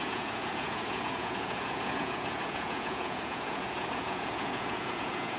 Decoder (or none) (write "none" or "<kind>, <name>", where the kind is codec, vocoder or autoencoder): vocoder, Vocos